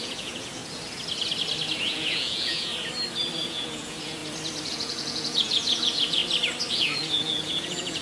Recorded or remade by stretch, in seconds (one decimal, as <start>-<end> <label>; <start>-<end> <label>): 0.0-0.6 remade; 0.6-1.8 recorded; 1.8-2.7 remade; 2.7-3.4 recorded; 3.4-4.2 remade; 4.2-4.7 recorded; 4.7-6.2 remade; 6.2-6.7 recorded; 6.7-8.0 remade